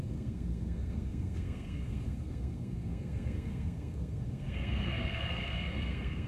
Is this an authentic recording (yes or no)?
no